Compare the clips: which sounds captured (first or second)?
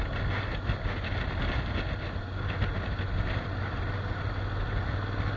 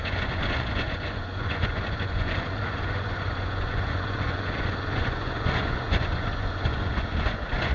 first